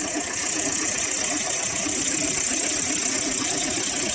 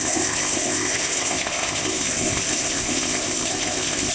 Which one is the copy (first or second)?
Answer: second